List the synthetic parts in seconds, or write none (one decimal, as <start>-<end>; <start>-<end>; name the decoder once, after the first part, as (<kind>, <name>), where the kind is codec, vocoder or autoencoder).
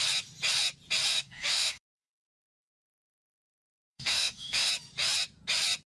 1.1-4.7 (autoencoder, DAC-VAE)